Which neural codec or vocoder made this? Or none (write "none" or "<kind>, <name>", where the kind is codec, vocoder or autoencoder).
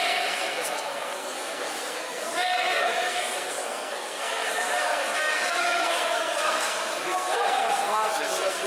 codec, SNAC